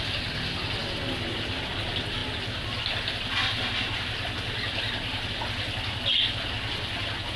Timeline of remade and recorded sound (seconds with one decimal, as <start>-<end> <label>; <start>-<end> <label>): 0.0-7.4 recorded